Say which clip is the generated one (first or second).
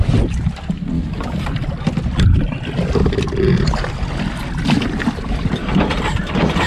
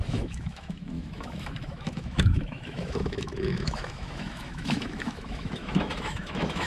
second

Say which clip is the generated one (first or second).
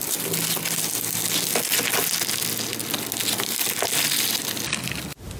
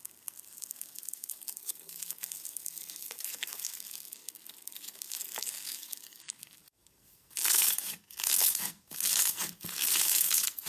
second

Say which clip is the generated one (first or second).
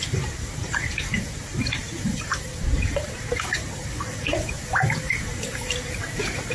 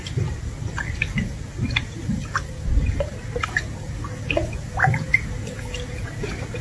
first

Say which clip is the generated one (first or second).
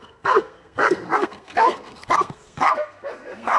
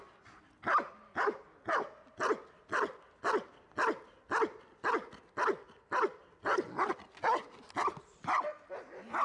first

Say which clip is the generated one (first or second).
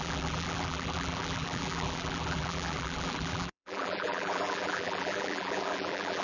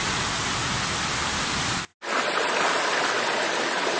first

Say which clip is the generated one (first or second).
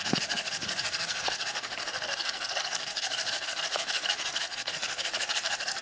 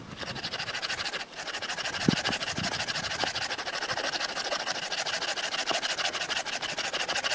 first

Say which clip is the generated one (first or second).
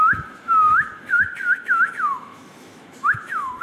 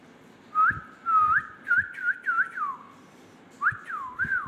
first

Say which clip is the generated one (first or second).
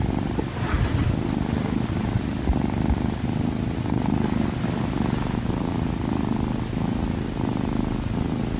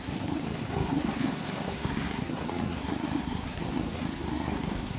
second